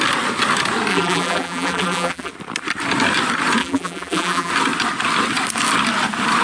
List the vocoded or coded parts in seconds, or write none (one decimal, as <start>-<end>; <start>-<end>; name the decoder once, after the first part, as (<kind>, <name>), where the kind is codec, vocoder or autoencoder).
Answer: 0.9-2.3 (vocoder, BigVGAN v2); 3.6-4.5